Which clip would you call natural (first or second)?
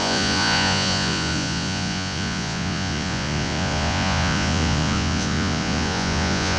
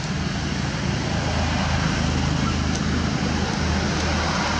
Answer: second